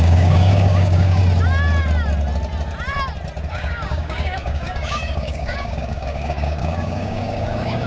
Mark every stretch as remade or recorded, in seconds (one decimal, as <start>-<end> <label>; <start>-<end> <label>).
0.0-1.2 remade; 1.2-3.5 recorded; 3.5-7.9 remade